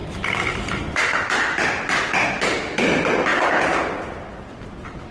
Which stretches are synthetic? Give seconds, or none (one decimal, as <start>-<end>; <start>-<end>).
none